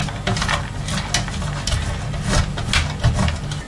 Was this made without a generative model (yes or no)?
yes